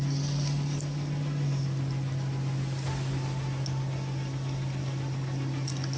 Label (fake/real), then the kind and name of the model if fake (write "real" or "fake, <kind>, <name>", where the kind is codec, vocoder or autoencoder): real